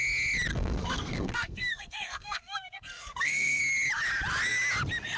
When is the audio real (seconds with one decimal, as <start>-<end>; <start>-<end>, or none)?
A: 0.0-0.5; 3.6-5.2